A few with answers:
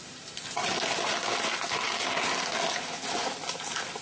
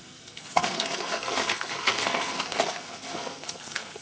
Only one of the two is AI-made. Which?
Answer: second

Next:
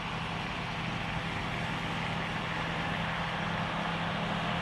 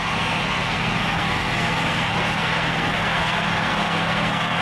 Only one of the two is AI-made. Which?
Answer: second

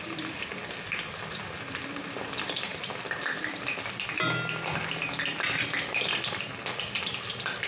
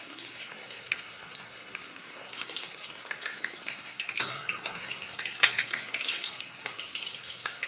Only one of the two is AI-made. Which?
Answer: second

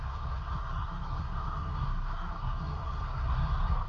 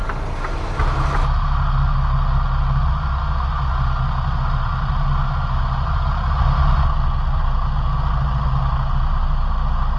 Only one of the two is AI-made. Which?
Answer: first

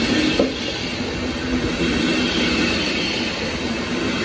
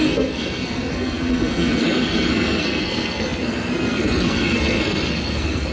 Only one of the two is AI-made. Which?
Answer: second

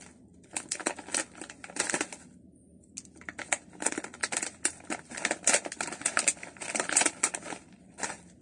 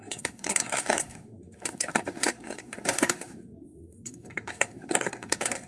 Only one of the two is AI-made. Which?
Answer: second